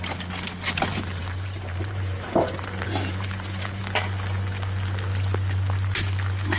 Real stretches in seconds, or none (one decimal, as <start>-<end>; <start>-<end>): 0.0-0.9; 3.8-6.6